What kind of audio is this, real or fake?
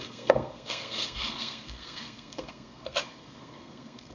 fake